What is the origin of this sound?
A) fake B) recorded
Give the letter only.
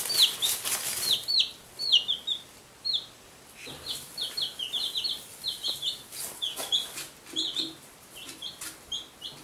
B